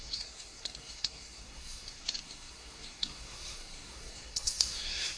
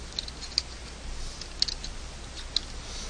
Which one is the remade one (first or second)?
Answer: first